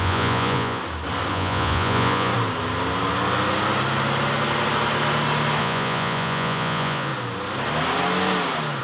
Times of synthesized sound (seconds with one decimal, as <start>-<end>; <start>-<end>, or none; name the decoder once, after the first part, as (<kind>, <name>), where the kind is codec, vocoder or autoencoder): 0.0-0.8 (vocoder, Vocos); 1.3-2.3; 5.6-7.1